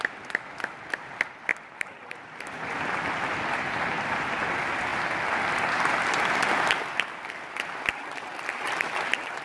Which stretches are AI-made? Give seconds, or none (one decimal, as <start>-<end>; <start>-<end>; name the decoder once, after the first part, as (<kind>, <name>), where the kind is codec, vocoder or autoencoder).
1.5-4.5 (vocoder, BigVGAN v2)